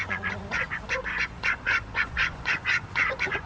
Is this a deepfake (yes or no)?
yes